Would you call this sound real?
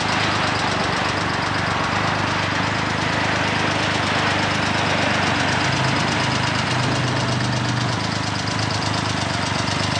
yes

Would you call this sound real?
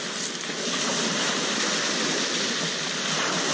yes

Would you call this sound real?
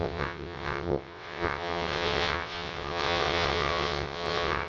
no